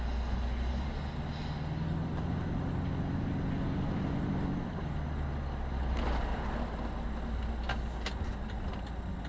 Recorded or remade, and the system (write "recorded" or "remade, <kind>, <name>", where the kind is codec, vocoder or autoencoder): recorded